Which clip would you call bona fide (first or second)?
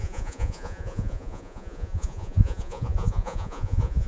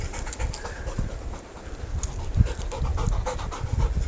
second